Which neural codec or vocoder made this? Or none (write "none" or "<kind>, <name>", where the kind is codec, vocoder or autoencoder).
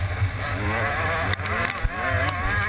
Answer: none